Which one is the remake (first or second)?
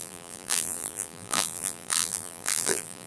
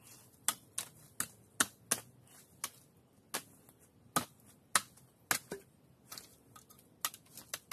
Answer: first